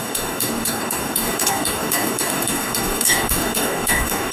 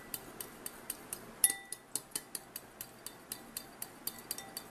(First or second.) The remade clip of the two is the first